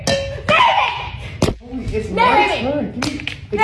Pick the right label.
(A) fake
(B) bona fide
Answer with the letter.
B